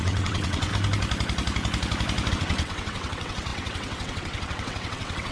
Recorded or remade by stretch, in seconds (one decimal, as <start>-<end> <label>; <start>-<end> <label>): 0.0-0.7 remade; 0.7-2.3 recorded; 2.3-5.3 remade